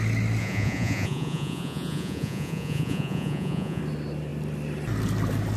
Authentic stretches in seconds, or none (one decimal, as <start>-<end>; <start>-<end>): 0.0-0.4; 3.8-5.6